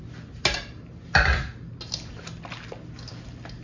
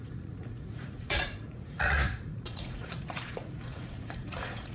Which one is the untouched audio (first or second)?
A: first